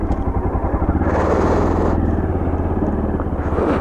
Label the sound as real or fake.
real